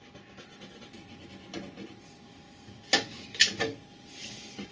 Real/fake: real